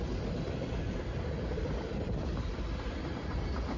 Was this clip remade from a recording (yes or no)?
yes